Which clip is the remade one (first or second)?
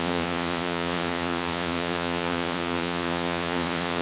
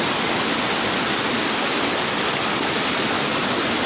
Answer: first